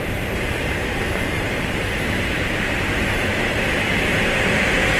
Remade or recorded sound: remade